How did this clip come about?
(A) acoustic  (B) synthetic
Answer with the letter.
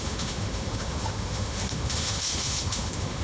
B